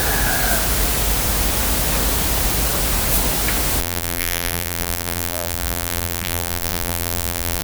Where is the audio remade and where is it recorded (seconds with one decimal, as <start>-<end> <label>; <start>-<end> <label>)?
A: 0.0-3.8 recorded; 3.8-7.6 remade

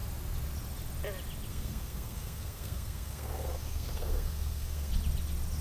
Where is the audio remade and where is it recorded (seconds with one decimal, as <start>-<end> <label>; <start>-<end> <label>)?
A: 0.0-1.5 recorded; 1.5-4.9 remade; 4.9-5.6 recorded